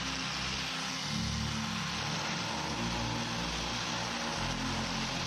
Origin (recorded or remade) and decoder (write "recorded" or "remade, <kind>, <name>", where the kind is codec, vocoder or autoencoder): recorded